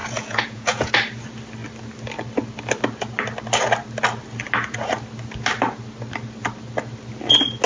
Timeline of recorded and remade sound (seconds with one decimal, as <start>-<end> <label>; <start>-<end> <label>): 0.0-0.9 remade; 0.9-7.7 recorded